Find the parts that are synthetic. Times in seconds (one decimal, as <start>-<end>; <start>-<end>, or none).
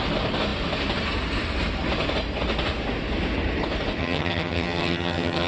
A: 4.0-5.5